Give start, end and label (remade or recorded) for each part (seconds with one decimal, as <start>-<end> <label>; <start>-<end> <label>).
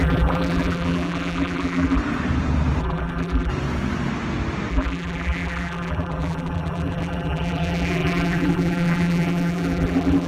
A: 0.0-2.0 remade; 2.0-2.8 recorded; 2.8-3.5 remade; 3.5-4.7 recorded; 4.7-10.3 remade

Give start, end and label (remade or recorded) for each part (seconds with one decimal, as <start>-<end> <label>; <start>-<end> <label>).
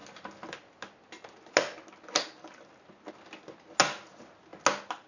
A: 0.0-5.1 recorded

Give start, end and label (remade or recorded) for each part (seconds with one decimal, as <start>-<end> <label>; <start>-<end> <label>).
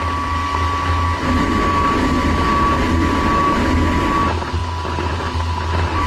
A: 0.0-6.1 recorded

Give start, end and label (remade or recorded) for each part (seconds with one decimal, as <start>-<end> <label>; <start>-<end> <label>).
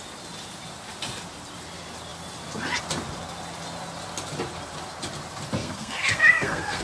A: 0.0-5.6 recorded; 5.6-6.8 remade